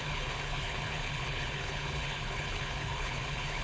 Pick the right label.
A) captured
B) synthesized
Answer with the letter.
B